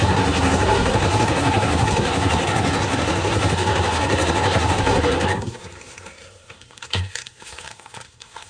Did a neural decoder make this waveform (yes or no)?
yes